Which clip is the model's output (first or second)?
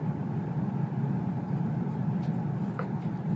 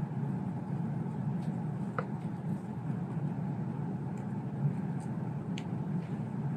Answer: first